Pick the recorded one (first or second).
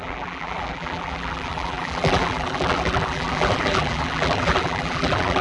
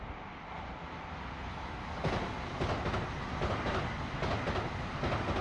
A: second